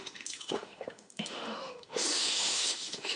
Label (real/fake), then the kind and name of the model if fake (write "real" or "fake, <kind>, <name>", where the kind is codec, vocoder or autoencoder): fake, autoencoder, DAC-VAE